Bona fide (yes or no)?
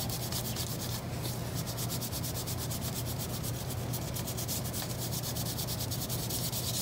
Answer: yes